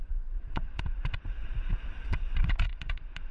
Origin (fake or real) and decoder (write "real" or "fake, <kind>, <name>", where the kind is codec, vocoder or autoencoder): fake, vocoder, Vocos